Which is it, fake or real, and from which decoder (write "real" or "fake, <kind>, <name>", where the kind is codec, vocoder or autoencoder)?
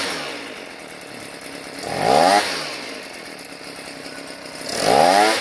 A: real